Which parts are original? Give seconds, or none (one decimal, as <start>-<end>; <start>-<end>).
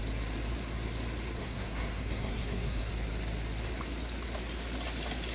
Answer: 0.0-1.4; 2.9-5.3